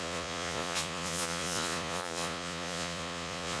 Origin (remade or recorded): remade